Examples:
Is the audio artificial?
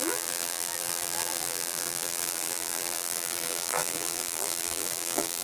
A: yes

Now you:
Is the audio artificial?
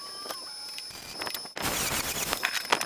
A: no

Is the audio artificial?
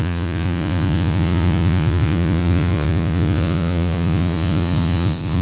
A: yes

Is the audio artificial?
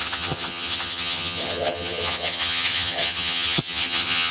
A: yes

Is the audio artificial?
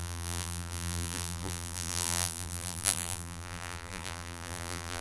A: yes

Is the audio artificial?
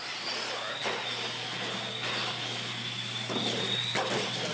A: no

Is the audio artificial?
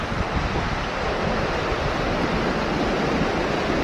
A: no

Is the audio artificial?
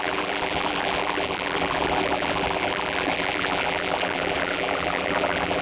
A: yes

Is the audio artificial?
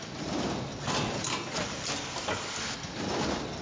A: no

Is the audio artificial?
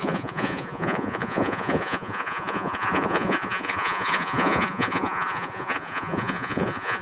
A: yes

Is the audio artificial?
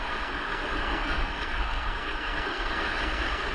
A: yes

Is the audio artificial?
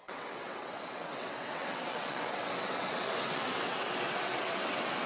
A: yes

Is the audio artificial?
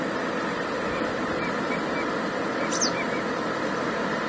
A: yes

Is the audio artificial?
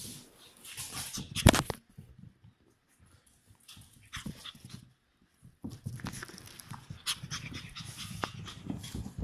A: no